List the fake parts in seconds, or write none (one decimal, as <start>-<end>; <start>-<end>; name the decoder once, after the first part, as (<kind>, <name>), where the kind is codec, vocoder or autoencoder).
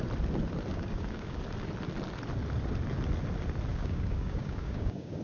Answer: 0.7-1.4 (codec, DAC); 3.7-5.2